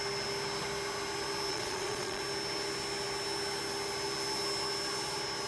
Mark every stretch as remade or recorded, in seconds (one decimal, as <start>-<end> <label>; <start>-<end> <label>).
0.0-1.5 recorded; 1.5-2.2 remade; 2.2-5.5 recorded